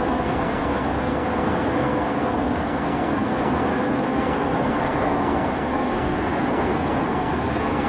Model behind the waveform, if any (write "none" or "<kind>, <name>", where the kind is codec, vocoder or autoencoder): codec, SNAC